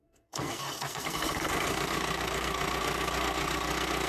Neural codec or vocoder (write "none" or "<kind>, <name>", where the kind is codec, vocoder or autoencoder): codec, SNAC